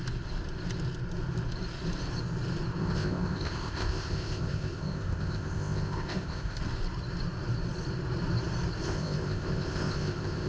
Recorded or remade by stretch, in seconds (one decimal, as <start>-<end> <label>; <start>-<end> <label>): 0.0-2.8 recorded; 2.8-6.6 remade; 6.6-8.8 recorded; 8.8-10.5 remade